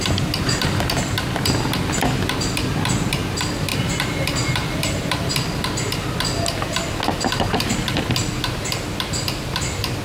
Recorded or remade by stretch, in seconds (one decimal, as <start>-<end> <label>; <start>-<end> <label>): 0.0-3.7 recorded; 3.7-5.3 remade; 5.3-10.0 recorded